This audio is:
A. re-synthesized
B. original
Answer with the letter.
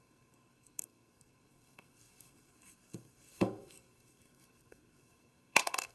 A